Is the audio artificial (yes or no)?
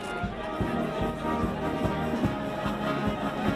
no